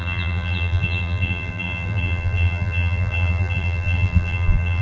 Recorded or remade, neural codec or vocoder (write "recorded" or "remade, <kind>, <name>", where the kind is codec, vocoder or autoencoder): remade, vocoder, BigVGAN v2